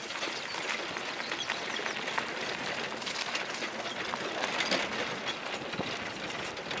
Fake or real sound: real